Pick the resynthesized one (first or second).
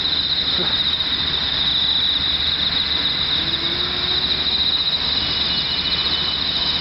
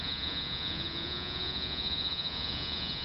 second